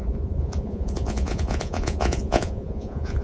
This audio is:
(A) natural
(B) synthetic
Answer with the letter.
B